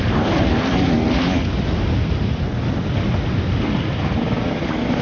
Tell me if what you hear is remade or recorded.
recorded